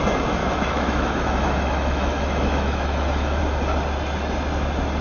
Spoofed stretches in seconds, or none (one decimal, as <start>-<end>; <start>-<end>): 0.4-3.4